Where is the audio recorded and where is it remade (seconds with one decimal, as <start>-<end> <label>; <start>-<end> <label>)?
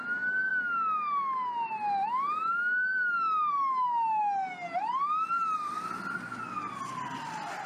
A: 0.0-7.7 recorded